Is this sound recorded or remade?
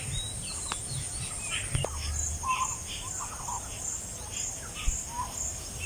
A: recorded